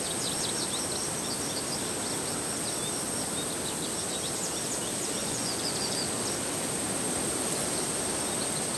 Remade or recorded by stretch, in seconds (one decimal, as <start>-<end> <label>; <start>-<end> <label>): 0.0-5.2 recorded; 5.2-5.7 remade; 5.7-8.8 recorded

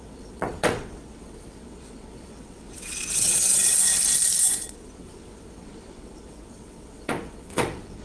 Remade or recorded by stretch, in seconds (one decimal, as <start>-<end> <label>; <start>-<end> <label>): 0.0-3.9 remade; 3.9-4.4 recorded; 4.4-8.0 remade

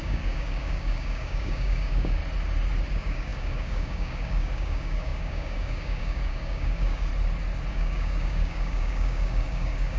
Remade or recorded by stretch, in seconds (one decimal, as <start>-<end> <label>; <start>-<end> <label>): 0.0-2.2 remade; 2.2-2.9 recorded; 2.9-7.1 remade; 7.1-7.7 recorded; 7.7-10.0 remade

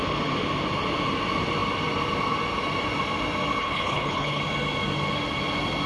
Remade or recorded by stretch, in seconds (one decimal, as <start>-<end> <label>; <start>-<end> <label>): 0.0-3.6 recorded; 3.6-4.4 remade; 4.4-5.9 recorded

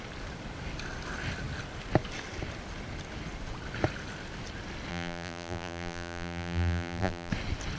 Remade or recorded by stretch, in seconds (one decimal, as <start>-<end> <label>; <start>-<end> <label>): 0.0-4.9 recorded; 4.9-7.3 remade; 7.3-7.8 recorded

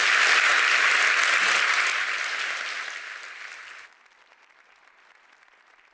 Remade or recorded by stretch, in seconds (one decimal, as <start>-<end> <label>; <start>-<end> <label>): 0.0-5.9 recorded

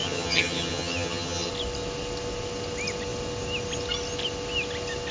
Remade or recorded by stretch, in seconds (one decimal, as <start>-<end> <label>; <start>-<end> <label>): 0.0-1.5 remade; 1.5-5.1 recorded